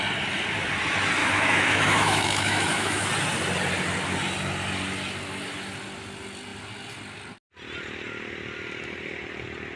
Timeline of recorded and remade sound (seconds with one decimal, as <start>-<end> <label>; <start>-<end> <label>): 0.0-1.2 recorded; 1.2-3.1 remade; 3.1-9.8 recorded